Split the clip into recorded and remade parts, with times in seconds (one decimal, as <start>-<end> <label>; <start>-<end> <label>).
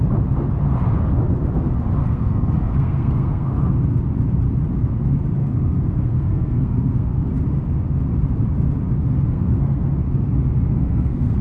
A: 0.0-2.0 recorded; 2.0-3.7 remade; 3.7-5.4 recorded; 5.4-7.3 remade; 7.3-9.0 recorded; 9.0-10.0 remade; 10.0-10.7 recorded; 10.7-11.4 remade